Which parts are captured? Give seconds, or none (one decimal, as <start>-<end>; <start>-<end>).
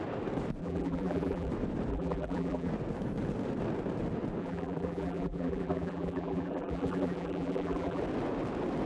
0.0-0.6; 1.5-1.9; 2.7-4.4; 8.0-8.9